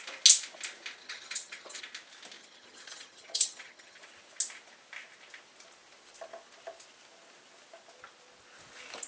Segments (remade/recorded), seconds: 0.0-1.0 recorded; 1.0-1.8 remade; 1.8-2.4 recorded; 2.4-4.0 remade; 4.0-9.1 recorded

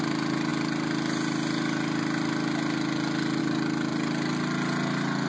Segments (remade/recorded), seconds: 0.0-5.3 recorded

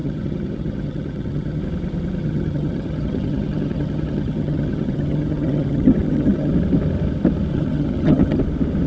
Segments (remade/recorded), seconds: 0.0-1.6 remade; 1.6-2.2 recorded; 2.2-6.5 remade; 6.5-7.5 recorded; 7.5-8.4 remade; 8.4-8.9 recorded

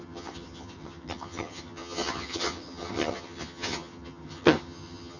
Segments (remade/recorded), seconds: 0.0-5.2 remade

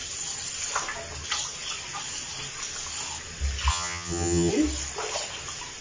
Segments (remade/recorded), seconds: 0.0-3.7 recorded; 3.7-4.5 remade; 4.5-5.8 recorded

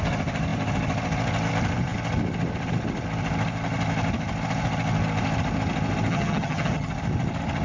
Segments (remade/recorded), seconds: 0.0-6.1 recorded; 6.1-6.9 remade; 6.9-7.6 recorded

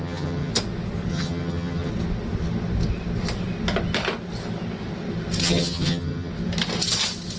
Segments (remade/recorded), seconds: 0.0-0.5 remade; 0.5-1.1 recorded; 1.1-1.9 remade; 1.9-5.4 recorded; 5.4-6.3 remade; 6.3-7.4 recorded

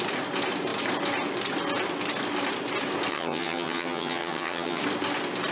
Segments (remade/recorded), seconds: 0.0-3.1 recorded; 3.1-4.8 remade; 4.8-5.5 recorded